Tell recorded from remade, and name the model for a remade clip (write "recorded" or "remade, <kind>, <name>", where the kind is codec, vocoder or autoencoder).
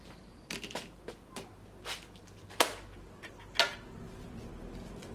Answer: recorded